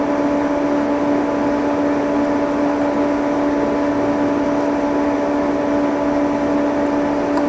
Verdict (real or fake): real